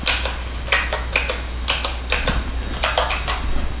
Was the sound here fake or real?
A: real